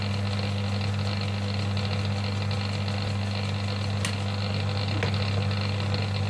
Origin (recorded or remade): recorded